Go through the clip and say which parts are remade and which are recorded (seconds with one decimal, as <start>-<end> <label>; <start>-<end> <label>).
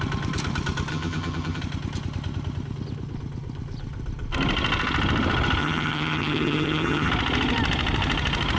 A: 0.0-0.9 recorded; 0.9-1.6 remade; 1.6-5.6 recorded; 5.6-7.1 remade; 7.1-8.6 recorded